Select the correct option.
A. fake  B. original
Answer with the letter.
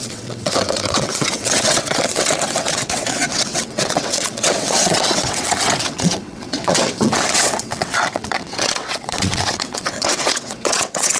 A